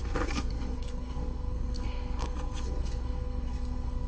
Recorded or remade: remade